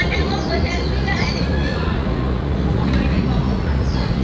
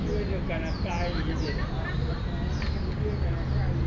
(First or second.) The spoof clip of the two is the first